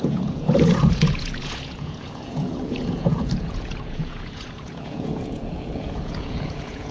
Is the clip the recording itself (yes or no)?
no